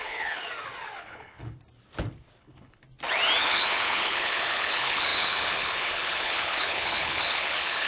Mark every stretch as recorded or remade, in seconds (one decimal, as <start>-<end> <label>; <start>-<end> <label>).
0.0-0.4 remade; 0.4-1.0 recorded; 1.0-1.6 remade; 1.6-2.4 recorded; 2.4-2.8 remade; 2.8-3.4 recorded; 3.4-7.9 remade